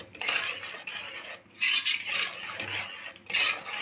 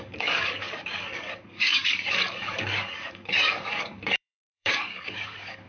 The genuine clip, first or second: first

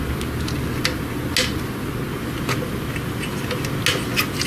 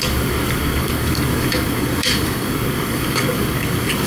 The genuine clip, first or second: first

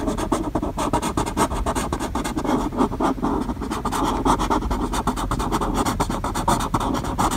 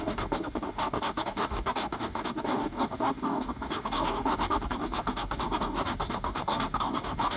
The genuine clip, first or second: first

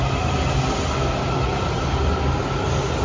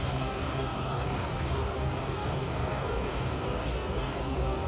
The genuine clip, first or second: first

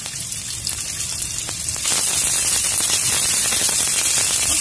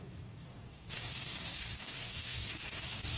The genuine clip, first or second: first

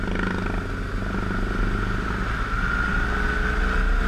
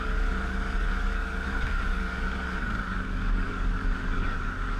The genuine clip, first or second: first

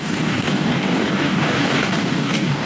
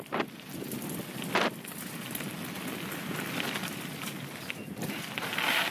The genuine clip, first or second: second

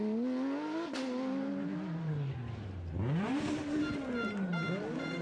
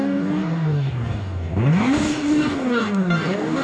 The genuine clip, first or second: first